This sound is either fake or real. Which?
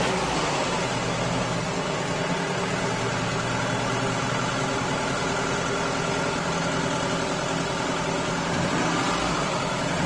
real